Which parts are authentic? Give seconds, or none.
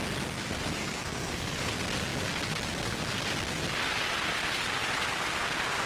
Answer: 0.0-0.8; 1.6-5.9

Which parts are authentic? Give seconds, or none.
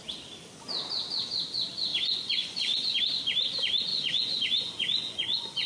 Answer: 0.0-1.9; 3.0-3.9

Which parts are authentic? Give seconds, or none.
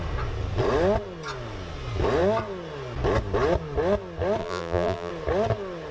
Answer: 0.0-4.4; 5.1-5.9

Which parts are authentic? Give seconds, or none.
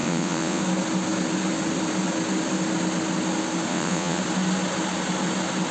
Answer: 0.6-3.7; 4.2-5.7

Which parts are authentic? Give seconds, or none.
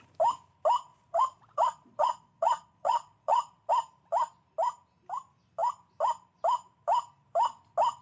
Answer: 0.0-0.9; 3.7-8.0